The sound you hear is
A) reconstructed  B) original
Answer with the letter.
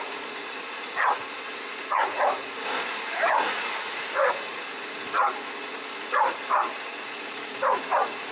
A